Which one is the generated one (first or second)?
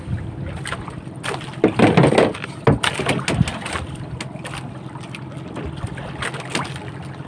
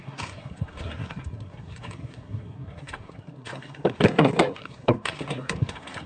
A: second